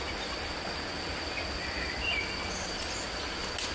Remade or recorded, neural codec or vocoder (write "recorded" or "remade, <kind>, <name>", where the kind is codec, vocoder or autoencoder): recorded